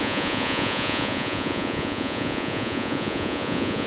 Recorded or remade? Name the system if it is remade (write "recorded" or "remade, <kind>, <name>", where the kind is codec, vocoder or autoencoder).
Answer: remade, vocoder, Vocos